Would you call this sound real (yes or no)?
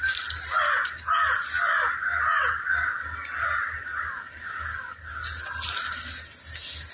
yes